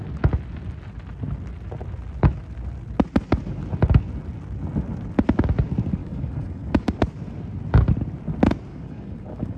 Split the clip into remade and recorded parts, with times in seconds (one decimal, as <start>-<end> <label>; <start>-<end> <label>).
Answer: 0.0-6.0 recorded; 6.0-7.0 remade; 7.0-8.7 recorded; 8.7-9.6 remade